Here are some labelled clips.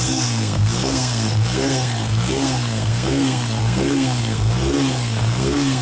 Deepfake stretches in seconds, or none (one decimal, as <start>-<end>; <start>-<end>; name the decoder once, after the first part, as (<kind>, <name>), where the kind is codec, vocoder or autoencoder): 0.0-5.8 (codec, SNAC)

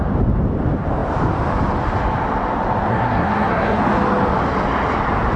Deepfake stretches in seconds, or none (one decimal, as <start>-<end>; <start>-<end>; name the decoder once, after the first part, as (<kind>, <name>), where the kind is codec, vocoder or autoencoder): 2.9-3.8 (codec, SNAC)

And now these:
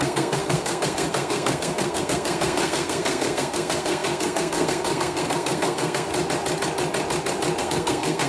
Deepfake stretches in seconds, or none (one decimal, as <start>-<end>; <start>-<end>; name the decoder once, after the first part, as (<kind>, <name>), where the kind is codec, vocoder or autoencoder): 0.0-6.1 (codec, SNAC); 7.6-8.3

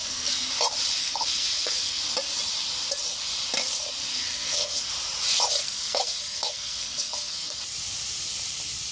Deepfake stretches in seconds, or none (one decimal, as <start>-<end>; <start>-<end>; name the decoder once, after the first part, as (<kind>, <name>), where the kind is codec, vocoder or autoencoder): 0.0-0.5 (codec, SNAC); 1.0-2.0; 4.1-4.9; 5.6-7.6

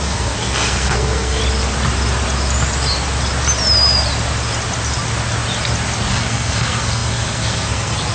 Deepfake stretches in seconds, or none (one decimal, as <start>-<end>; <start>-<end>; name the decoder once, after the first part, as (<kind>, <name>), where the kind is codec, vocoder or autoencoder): 0.0-1.4 (codec, SNAC); 6.1-8.1

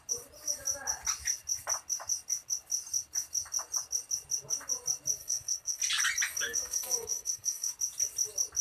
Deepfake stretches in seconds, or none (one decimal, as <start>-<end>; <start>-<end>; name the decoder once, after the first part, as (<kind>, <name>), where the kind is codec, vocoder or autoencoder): 5.2-5.8 (codec, SNAC); 6.3-7.7

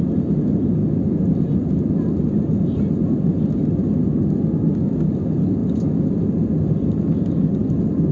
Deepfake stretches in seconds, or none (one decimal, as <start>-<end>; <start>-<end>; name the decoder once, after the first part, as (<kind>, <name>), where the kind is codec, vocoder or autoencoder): none